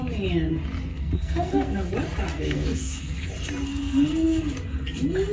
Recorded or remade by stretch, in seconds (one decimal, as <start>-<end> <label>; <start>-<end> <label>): 0.0-0.9 recorded; 0.9-1.9 remade; 1.9-2.3 recorded; 2.3-3.3 remade; 3.3-3.7 recorded; 3.7-4.4 remade; 4.4-5.3 recorded